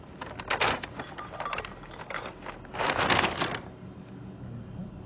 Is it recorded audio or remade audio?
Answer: recorded